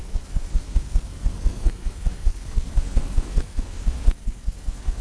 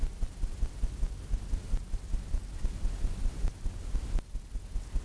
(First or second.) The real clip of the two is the second